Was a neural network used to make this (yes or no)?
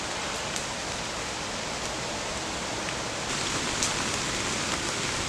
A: no